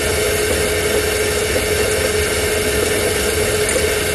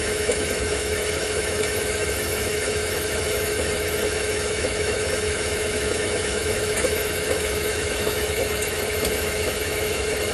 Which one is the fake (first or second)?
second